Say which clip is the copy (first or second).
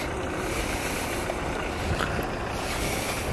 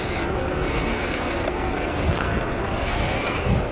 second